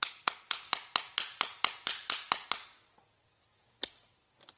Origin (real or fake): real